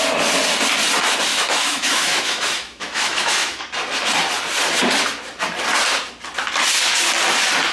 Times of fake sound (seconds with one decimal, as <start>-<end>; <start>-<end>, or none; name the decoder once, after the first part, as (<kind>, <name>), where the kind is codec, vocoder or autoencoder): 1.3-3.6 (autoencoder, DAC-VAE)

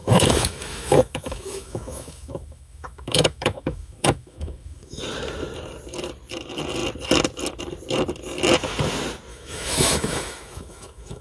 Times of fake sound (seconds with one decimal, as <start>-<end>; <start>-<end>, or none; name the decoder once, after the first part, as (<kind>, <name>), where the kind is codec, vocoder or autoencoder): 0.0-5.0 (autoencoder, DAC-VAE); 9.3-11.2

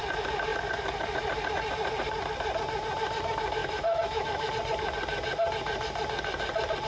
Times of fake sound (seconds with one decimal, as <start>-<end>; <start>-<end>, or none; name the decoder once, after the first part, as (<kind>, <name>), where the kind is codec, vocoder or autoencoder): 3.6-4.5 (autoencoder, DAC-VAE)

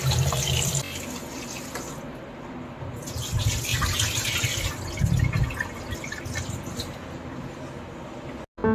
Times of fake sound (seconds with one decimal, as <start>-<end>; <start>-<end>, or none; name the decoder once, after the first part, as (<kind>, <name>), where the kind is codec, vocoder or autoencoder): none

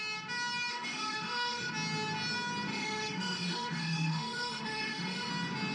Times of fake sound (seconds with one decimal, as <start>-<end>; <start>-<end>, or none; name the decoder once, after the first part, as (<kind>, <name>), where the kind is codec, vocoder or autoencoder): 0.7-1.7 (autoencoder, DAC-VAE); 2.7-5.3

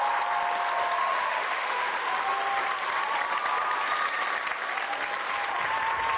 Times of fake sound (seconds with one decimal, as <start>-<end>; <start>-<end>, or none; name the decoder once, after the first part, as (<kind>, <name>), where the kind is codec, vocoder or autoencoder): 1.0-2.1 (autoencoder, DAC-VAE)